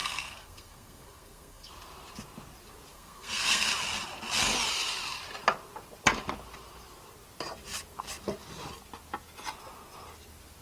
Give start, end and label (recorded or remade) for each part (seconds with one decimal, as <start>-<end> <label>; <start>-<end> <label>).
0.0-1.7 remade; 1.7-2.9 recorded; 2.9-3.7 remade; 3.7-10.6 recorded